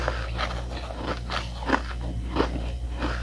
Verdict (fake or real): real